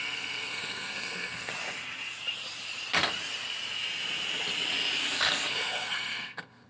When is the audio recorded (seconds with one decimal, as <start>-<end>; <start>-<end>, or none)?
1.5-5.5